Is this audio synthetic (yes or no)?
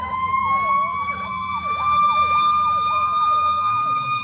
yes